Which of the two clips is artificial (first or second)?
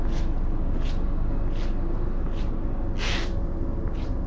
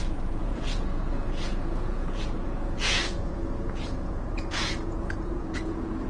second